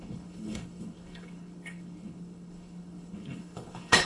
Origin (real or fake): fake